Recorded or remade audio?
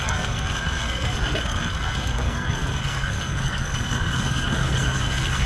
remade